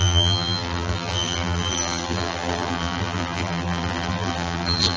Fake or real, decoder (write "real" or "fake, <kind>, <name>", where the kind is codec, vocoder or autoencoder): fake, vocoder, BigVGAN v2